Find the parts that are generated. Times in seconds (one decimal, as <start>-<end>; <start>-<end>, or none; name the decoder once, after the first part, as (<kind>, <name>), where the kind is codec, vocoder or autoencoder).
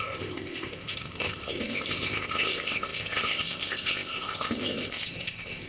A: 0.0-5.7 (codec, ZipCodec)